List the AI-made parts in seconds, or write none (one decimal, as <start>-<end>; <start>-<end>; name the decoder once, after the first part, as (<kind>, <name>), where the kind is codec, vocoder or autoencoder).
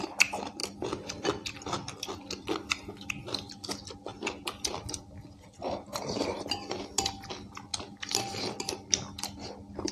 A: 0.6-3.1 (vocoder, BigVGAN v2); 4.1-5.0